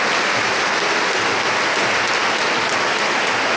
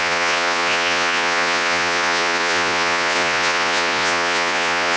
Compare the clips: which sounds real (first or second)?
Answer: first